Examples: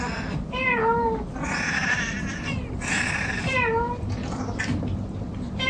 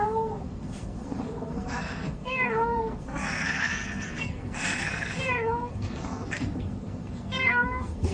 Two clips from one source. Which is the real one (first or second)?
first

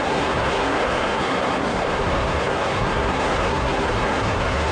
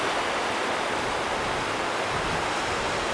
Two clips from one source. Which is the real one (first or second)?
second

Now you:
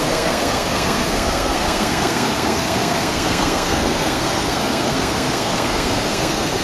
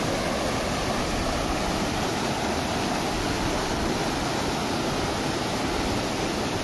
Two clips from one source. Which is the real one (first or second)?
second